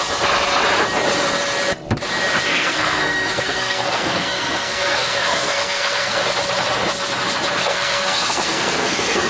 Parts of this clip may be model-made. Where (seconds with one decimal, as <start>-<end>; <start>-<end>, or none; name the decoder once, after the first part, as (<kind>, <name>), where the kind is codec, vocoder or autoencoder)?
2.5-6.2 (codec, SNAC); 7.6-9.3